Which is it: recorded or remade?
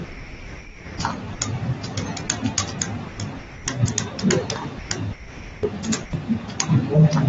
recorded